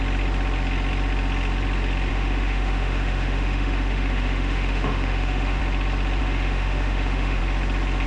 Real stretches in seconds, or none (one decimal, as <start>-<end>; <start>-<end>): 0.0-2.1; 5.6-6.2; 7.4-8.1